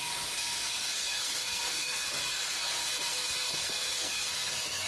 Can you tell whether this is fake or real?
fake